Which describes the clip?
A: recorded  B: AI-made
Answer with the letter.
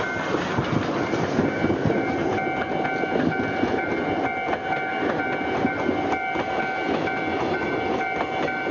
A